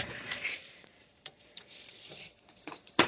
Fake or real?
fake